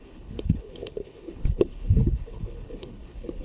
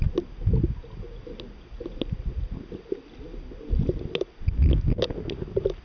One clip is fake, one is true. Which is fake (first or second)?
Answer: first